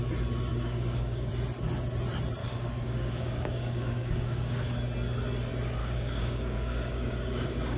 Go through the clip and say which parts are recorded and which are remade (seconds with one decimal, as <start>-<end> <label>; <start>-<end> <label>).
0.0-0.5 recorded; 0.5-1.3 remade; 1.3-2.4 recorded; 2.4-4.7 remade; 4.7-5.8 recorded; 5.8-7.8 remade